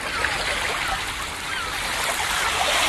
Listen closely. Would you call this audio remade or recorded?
recorded